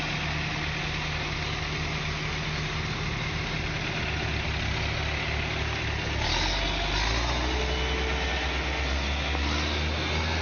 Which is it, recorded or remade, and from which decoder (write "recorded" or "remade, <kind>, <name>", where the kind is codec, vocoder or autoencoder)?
recorded